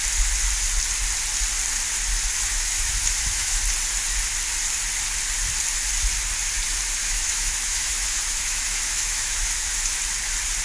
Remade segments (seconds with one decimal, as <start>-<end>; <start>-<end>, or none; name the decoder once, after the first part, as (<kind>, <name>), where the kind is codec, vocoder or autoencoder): 2.5-3.6 (autoencoder, DAC-VAE); 7.0-10.0